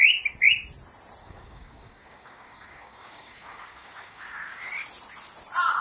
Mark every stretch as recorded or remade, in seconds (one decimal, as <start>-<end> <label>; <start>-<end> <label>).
0.0-1.2 recorded; 1.2-4.7 remade; 4.7-5.8 recorded